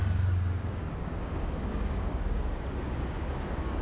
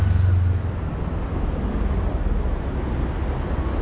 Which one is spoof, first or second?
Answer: first